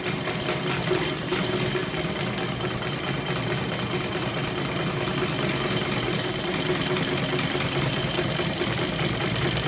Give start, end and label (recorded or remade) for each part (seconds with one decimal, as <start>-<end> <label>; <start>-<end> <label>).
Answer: 0.0-9.7 recorded